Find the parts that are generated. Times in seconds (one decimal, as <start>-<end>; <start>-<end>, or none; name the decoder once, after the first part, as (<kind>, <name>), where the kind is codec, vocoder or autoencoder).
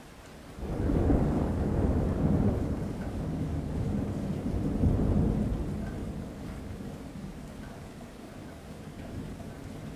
0.6-4.5 (codec, DAC); 6.0-9.5